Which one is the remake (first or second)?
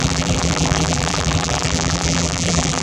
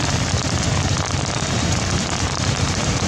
first